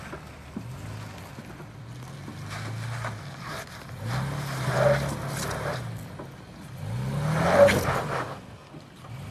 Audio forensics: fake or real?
real